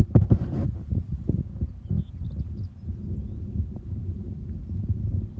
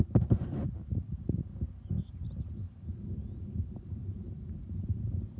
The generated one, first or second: second